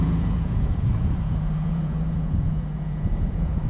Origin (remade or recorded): remade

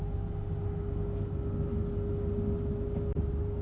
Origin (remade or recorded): recorded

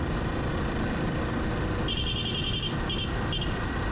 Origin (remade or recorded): recorded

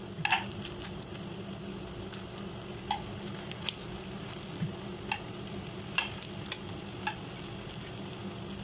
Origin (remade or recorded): recorded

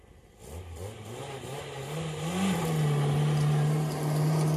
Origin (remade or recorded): recorded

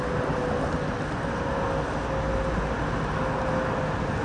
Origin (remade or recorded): recorded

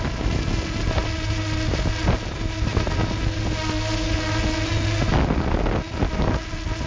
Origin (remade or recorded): recorded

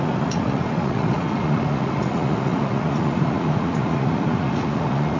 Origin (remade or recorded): remade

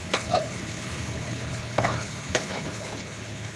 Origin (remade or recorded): remade